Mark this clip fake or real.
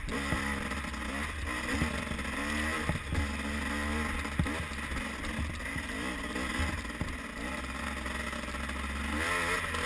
real